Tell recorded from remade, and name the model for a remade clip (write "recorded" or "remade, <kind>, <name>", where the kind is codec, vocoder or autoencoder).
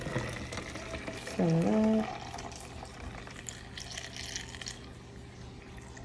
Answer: recorded